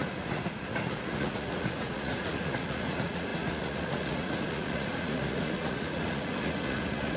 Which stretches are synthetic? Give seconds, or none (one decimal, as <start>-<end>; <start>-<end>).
0.0-7.2